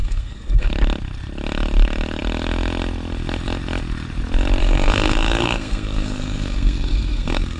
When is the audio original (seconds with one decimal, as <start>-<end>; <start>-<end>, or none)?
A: 0.7-4.6